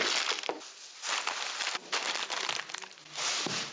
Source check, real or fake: real